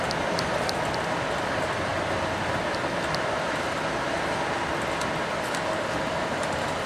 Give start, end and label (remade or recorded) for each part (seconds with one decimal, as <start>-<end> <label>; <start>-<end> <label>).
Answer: 0.0-6.9 recorded